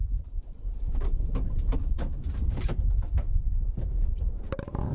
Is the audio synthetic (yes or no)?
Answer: yes